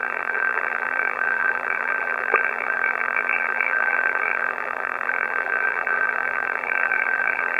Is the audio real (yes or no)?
no